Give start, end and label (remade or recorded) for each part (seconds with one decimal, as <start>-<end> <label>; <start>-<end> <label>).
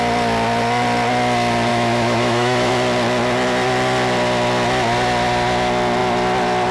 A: 0.0-1.7 recorded; 1.7-2.7 remade; 2.7-6.7 recorded